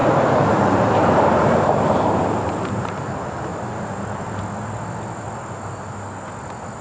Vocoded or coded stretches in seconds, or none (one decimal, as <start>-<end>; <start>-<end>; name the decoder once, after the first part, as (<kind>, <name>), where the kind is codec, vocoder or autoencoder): 0.0-2.9 (vocoder, BigVGAN v2); 3.5-4.4